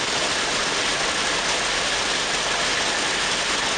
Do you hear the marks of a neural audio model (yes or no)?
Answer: no